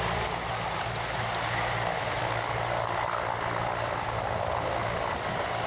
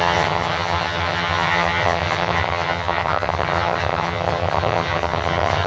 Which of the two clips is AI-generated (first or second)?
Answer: second